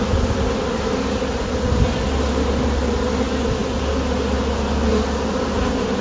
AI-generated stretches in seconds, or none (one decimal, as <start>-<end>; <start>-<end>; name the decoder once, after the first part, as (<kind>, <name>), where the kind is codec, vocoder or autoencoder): none